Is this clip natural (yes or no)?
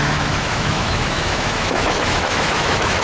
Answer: no